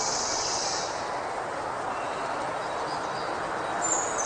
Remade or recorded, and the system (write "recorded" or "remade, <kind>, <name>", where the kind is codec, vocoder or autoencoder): recorded